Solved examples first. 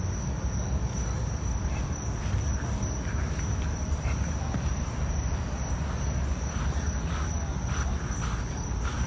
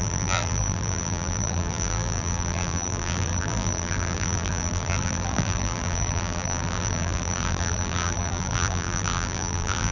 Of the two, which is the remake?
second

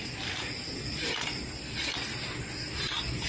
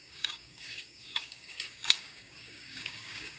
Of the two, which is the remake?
second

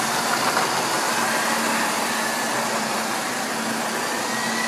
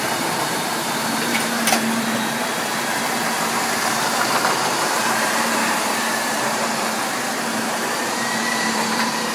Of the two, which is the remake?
second